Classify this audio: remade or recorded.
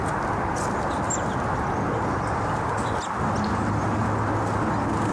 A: recorded